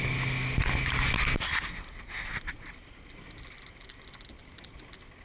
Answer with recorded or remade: recorded